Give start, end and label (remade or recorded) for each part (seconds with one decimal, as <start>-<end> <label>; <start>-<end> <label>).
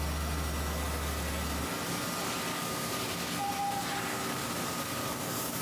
0.0-2.5 recorded; 2.5-3.3 remade; 3.3-4.1 recorded; 4.1-5.6 remade